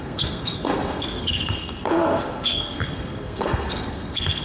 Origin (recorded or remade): remade